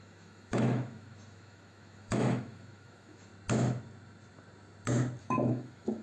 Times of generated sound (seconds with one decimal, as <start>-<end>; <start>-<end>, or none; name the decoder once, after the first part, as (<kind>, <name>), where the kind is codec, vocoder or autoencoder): 0.0-3.3 (autoencoder, DAC-VAE); 5.2-6.0